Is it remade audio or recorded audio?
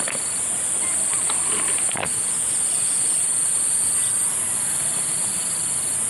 recorded